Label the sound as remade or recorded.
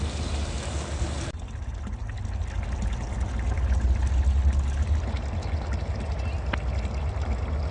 recorded